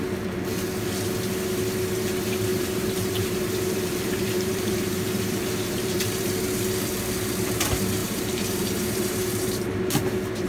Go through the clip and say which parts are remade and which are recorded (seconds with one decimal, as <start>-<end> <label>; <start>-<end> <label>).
0.0-2.5 recorded; 2.5-6.3 remade; 6.3-8.0 recorded; 8.0-9.7 remade; 9.7-10.5 recorded